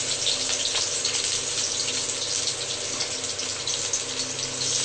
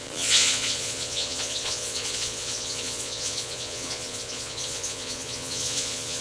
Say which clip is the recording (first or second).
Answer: first